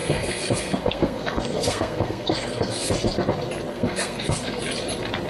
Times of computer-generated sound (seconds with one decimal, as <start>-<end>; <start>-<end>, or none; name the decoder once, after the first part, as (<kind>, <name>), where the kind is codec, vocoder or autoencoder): 0.0-2.9 (codec, SNAC); 3.7-4.6